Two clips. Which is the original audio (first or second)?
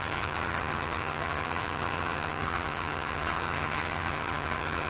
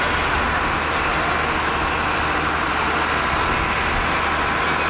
second